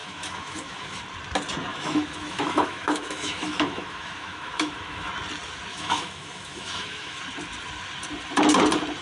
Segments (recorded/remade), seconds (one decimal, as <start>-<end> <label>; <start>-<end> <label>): 0.0-1.0 remade; 1.0-1.7 recorded; 1.7-5.1 remade; 5.1-5.7 recorded; 5.7-7.2 remade; 7.2-9.0 recorded